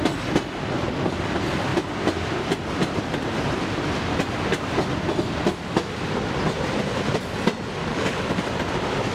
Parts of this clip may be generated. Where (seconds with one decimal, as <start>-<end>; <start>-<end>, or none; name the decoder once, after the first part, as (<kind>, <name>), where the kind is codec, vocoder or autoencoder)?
7.8-8.4 (codec, DAC)